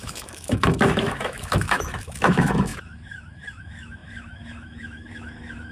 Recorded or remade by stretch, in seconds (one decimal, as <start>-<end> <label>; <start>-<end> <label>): 0.0-5.7 remade